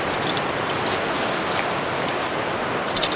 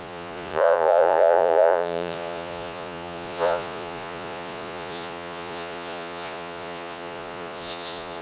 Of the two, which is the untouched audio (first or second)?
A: first